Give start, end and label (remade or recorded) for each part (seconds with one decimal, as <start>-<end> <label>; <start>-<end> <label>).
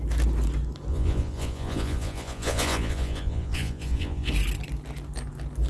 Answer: 0.0-0.9 recorded; 0.9-4.3 remade; 4.3-5.7 recorded